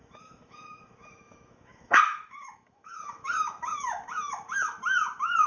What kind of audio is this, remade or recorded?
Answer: remade